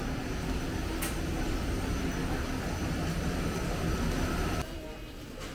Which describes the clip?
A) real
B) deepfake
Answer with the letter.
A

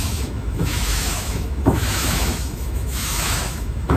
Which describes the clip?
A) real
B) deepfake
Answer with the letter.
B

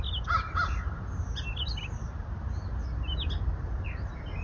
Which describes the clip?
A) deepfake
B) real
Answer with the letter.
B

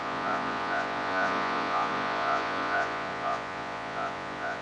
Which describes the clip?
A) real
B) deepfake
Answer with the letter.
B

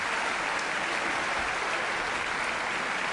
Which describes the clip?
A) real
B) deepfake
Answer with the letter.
A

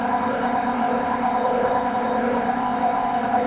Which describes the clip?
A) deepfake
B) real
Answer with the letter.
A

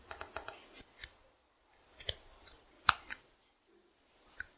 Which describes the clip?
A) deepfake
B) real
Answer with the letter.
B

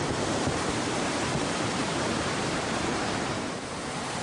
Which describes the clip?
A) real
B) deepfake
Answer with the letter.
B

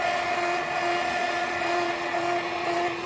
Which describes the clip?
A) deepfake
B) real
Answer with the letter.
A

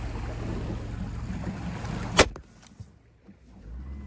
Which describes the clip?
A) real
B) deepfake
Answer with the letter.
A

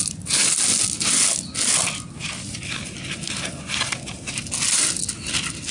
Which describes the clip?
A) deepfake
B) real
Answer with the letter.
B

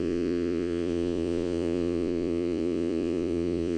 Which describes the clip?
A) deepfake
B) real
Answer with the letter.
A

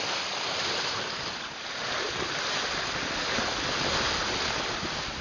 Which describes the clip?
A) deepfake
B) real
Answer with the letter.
B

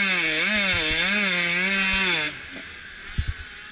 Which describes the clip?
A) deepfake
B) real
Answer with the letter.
B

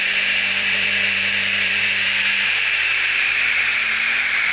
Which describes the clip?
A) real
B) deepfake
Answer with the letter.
B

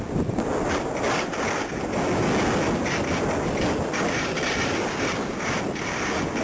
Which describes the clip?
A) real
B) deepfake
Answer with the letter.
A